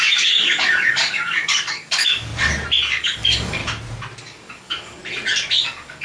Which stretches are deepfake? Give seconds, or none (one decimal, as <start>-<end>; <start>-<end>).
0.0-2.3; 2.9-3.6; 4.2-5.0; 5.6-6.0